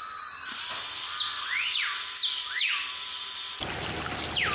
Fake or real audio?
real